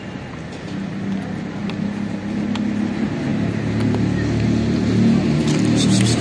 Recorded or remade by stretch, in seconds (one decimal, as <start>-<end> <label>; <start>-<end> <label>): 0.0-6.2 recorded